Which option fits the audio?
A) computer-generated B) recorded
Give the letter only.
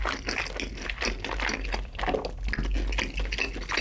B